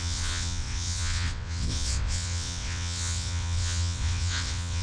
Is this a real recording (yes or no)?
no